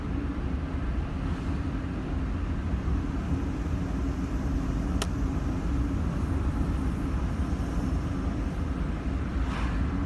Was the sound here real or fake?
real